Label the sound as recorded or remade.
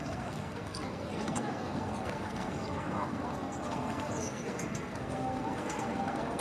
remade